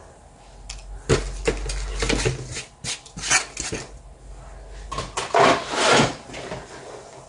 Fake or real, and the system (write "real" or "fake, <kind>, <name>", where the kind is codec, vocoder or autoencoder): real